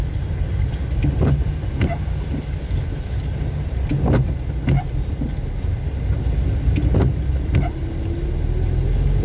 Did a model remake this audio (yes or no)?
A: no